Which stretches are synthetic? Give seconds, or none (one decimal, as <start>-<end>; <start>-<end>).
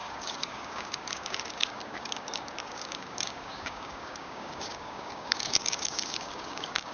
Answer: 0.0-6.9